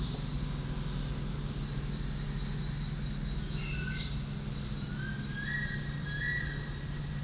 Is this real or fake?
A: real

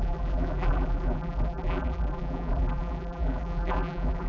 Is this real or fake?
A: fake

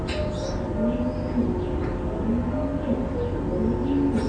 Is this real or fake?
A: real